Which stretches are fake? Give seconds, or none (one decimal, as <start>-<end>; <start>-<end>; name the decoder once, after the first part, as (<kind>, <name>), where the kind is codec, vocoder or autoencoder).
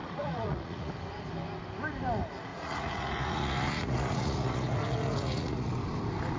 0.0-0.9 (vocoder, Vocos); 2.5-5.7